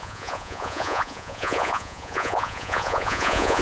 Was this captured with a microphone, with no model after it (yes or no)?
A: no